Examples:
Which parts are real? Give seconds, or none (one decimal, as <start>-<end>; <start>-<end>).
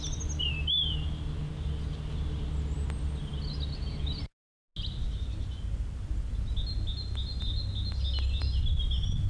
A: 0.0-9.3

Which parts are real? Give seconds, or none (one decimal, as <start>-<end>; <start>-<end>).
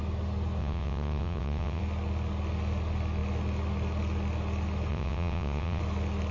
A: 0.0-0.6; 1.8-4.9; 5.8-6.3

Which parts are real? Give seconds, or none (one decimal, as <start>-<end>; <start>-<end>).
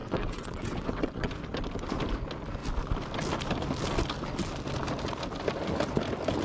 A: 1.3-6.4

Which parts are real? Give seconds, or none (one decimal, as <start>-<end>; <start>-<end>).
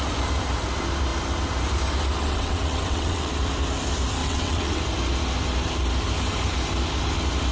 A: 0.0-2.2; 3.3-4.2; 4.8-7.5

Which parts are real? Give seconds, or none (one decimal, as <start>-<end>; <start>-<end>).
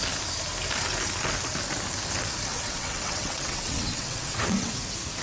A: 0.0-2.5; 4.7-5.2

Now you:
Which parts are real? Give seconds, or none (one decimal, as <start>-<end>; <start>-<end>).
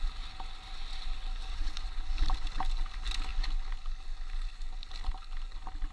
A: 0.0-1.5; 2.1-5.9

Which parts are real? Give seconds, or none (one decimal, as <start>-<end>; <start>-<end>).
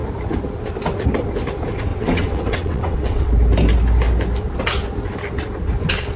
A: 0.0-1.9; 3.3-6.2